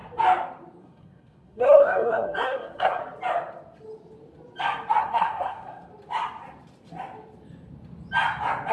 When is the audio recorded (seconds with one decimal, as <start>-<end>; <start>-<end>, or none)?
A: 0.0-0.8; 3.0-5.0; 5.9-8.7